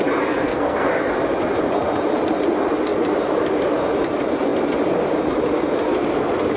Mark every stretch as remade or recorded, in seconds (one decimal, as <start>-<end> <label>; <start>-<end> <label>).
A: 0.0-0.4 recorded; 0.4-0.9 remade; 0.9-6.6 recorded